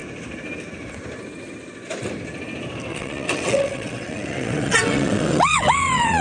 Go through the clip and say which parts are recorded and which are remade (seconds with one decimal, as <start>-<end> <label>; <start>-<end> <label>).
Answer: 0.0-2.9 recorded; 2.9-6.2 remade